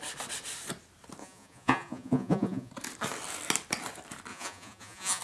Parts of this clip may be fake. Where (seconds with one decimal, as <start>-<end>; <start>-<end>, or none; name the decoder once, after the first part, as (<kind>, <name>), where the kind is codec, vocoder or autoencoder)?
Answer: 1.2-2.7 (vocoder, Vocos); 4.3-5.2